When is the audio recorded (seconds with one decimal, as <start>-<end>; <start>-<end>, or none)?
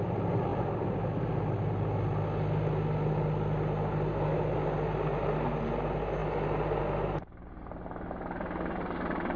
0.0-9.4